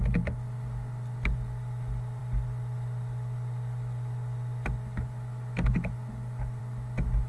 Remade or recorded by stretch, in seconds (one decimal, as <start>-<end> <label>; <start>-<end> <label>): 0.0-7.3 recorded